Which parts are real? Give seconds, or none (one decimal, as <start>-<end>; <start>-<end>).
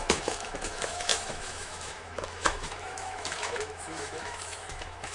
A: none